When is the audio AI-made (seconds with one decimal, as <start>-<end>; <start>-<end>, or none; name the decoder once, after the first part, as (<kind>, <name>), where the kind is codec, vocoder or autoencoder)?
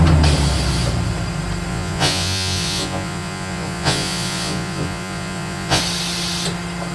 1.7-5.8 (vocoder, Vocos)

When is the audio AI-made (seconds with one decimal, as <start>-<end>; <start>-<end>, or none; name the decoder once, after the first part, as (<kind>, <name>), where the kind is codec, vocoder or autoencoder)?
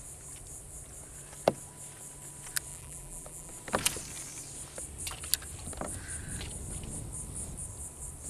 2.7-3.5 (vocoder, BigVGAN v2)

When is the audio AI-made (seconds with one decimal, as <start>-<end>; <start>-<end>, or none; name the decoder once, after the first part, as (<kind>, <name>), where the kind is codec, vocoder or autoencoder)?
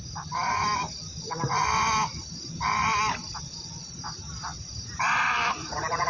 0.0-1.0 (vocoder, BigVGAN v2); 3.8-6.1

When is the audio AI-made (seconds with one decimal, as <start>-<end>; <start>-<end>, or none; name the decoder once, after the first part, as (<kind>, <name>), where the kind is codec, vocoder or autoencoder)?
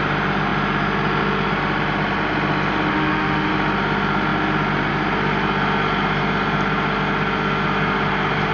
2.9-3.5 (autoencoder, DAC-VAE)